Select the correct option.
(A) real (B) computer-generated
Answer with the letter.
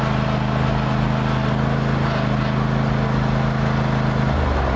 A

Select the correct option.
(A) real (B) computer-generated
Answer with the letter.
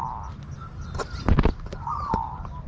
A